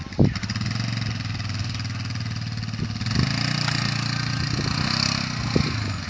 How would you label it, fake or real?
real